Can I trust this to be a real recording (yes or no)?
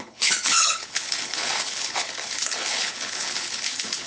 no